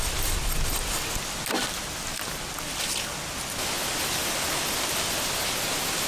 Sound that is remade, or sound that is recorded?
recorded